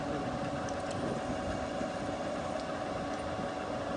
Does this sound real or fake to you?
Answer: real